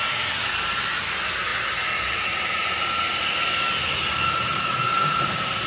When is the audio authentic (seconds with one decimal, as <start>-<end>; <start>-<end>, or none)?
0.0-5.7